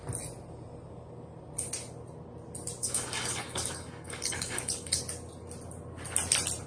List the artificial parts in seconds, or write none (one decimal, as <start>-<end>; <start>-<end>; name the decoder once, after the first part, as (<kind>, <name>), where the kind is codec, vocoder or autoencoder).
2.8-5.0 (codec, DAC)